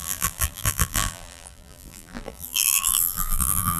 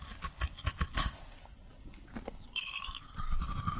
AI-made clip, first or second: first